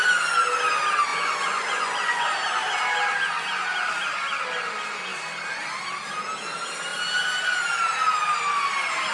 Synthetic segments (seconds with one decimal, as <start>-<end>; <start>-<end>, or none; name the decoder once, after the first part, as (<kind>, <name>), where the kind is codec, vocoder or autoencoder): 1.1-2.3 (vocoder, Vocos)